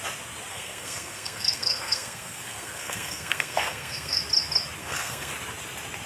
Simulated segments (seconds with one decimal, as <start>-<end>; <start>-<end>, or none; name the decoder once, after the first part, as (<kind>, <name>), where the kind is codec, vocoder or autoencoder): 0.5-4.2 (codec, SNAC); 4.8-5.3